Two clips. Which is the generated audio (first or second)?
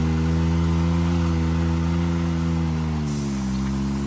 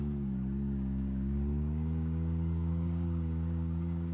second